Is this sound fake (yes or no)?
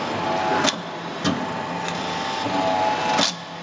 no